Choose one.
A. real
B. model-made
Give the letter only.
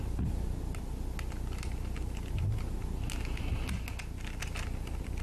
A